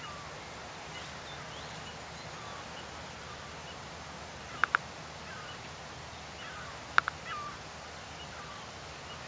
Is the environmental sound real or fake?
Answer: real